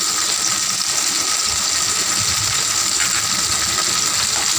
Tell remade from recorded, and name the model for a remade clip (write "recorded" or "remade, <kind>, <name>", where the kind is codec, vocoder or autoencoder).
recorded